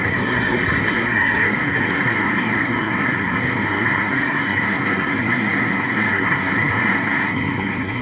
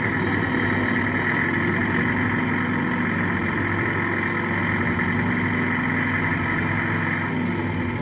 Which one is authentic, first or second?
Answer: second